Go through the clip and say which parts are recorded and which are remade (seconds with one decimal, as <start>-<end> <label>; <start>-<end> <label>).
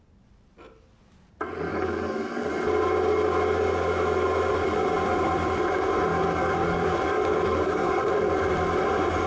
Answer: 0.0-1.7 recorded; 1.7-2.5 remade; 2.5-6.1 recorded; 6.1-8.5 remade; 8.5-9.3 recorded